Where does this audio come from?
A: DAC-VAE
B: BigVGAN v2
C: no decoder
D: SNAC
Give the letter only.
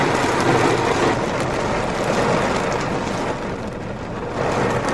C